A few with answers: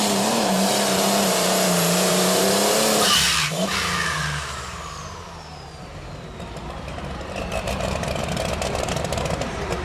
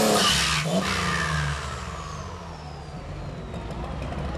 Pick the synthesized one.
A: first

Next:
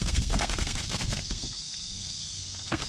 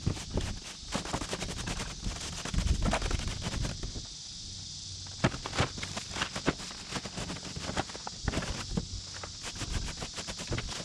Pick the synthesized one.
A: first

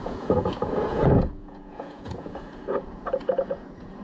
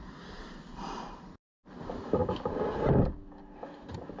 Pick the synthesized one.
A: first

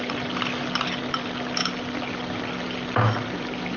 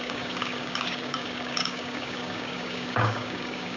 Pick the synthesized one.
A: second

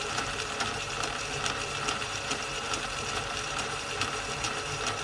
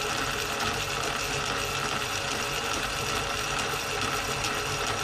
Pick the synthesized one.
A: first